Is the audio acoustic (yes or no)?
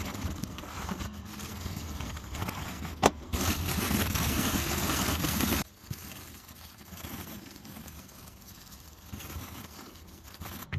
no